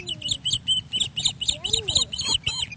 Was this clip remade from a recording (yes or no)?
no